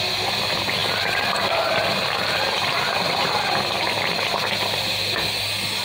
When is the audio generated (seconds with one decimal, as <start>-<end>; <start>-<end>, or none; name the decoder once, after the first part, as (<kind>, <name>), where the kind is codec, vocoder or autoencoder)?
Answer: none